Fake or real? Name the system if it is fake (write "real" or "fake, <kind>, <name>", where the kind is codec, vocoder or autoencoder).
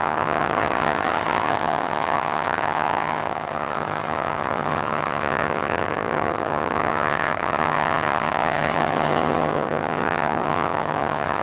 fake, vocoder, HiFi-GAN